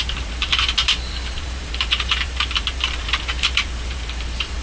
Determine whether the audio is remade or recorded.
remade